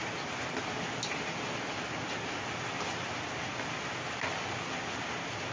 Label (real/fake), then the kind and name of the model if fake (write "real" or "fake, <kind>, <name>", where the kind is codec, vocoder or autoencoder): real